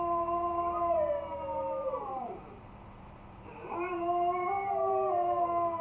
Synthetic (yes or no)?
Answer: yes